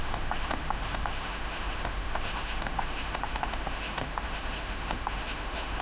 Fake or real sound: fake